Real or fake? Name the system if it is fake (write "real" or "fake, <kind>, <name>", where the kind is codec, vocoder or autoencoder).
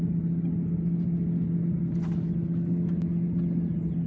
real